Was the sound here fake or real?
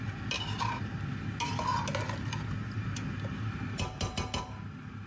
real